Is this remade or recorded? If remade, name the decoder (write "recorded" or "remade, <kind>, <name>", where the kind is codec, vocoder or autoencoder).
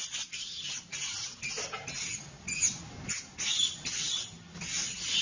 recorded